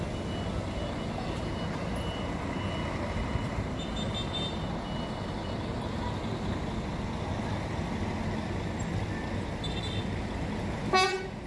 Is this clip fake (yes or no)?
no